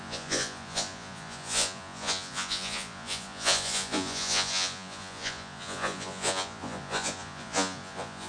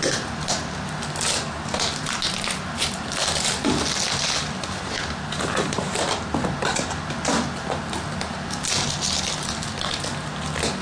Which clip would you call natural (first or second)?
second